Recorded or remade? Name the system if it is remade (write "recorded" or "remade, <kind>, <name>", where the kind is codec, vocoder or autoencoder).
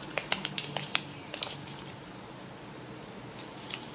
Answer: recorded